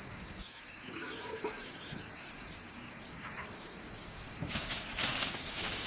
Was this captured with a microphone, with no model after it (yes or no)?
no